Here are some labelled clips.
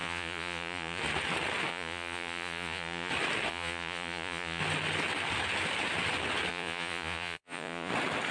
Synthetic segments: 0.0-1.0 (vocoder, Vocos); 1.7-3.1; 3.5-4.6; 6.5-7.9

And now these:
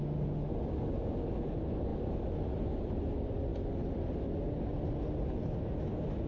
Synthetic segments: none